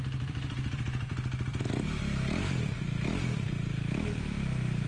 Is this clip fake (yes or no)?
yes